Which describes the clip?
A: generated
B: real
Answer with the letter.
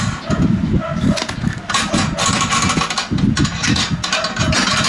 B